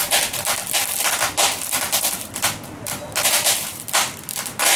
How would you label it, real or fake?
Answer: real